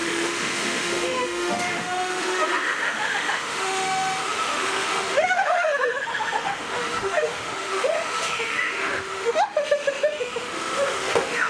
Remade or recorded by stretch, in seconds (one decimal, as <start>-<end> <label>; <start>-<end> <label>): 0.0-11.5 remade